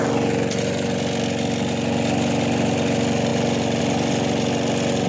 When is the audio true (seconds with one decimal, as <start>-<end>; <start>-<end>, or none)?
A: 0.0-5.1